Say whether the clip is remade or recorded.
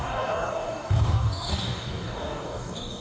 remade